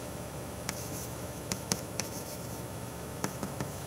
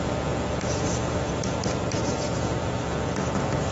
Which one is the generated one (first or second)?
first